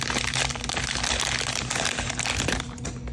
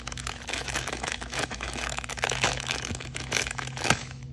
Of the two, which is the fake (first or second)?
second